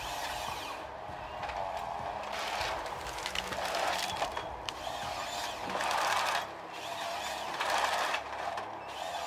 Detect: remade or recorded recorded